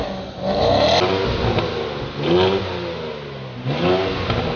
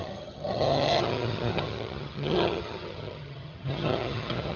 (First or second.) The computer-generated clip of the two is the second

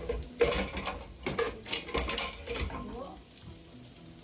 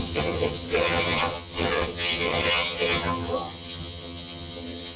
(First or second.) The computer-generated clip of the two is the second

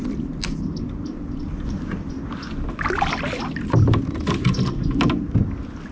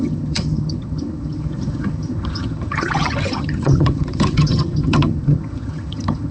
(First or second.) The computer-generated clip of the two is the second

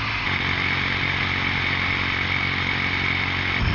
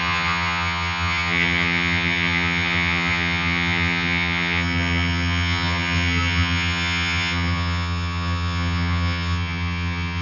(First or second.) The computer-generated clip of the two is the second